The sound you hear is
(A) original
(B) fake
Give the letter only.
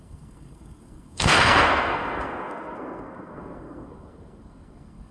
B